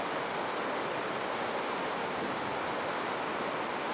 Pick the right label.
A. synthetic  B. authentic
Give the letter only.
B